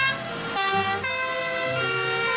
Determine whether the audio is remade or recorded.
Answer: recorded